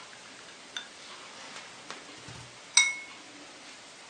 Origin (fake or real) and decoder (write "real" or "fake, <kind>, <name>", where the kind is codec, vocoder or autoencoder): real